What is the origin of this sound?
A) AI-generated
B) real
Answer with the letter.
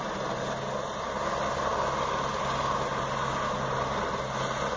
B